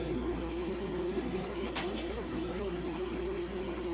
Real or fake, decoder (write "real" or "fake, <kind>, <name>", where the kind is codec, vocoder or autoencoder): fake, codec, SNAC